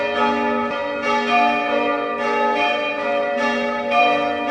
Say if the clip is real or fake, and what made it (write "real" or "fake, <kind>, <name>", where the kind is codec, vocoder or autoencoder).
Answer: real